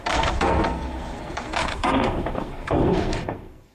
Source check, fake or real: fake